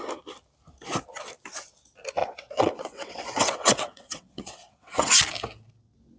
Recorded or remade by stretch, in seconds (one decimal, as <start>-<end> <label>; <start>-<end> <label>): 0.0-2.2 recorded; 2.2-5.1 remade; 5.1-6.2 recorded

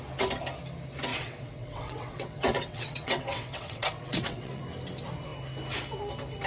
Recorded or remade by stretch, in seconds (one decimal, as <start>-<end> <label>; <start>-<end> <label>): 0.0-1.1 recorded; 1.1-4.6 remade; 4.6-6.5 recorded

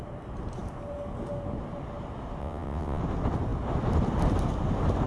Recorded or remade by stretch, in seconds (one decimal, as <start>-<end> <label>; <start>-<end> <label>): 0.0-2.4 recorded; 2.4-3.0 remade; 3.0-5.1 recorded

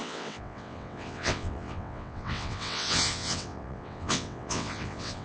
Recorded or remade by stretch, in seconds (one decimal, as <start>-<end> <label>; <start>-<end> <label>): 0.0-5.2 remade

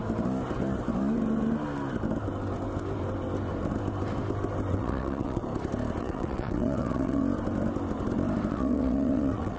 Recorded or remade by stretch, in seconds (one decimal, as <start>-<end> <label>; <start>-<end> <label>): 0.0-4.7 recorded; 4.7-5.4 remade; 5.4-6.0 recorded; 6.0-7.2 remade; 7.2-8.5 recorded; 8.5-9.6 remade